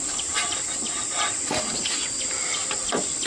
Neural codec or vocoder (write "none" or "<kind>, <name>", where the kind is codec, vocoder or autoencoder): none